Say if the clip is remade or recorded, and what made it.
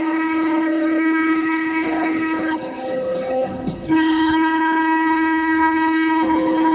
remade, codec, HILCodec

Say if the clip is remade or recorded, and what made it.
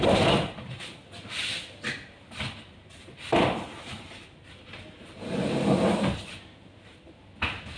recorded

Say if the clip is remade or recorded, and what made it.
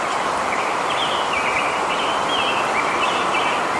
recorded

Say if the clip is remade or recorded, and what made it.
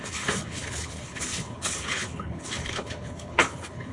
remade, codec, HILCodec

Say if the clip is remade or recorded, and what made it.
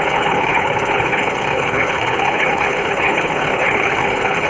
remade, codec, HILCodec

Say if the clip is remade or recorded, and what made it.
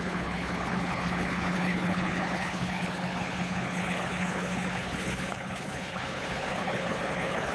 remade, codec, HILCodec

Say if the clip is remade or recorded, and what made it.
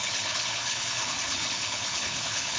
remade, codec, HILCodec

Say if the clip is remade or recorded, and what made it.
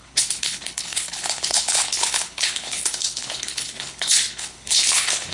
remade, codec, HILCodec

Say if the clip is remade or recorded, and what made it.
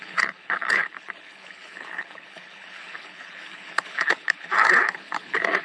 remade, codec, HILCodec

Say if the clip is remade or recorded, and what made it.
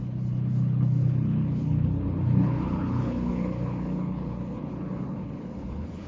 remade, codec, HILCodec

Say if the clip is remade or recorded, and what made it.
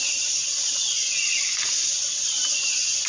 recorded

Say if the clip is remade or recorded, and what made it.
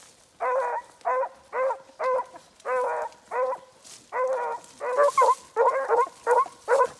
recorded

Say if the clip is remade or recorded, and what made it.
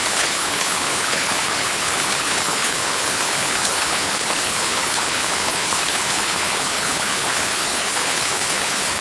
remade, codec, HILCodec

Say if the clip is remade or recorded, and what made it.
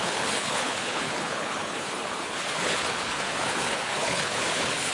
remade, codec, HILCodec